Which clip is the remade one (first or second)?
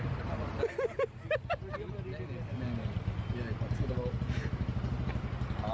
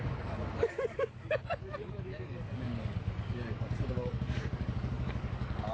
second